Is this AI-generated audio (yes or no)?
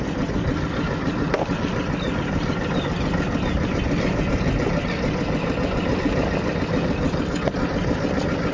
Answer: no